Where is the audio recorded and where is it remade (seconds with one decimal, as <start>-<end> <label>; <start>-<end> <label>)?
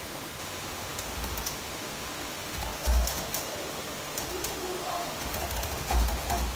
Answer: 0.0-6.6 remade